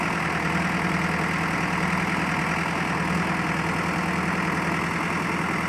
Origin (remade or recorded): recorded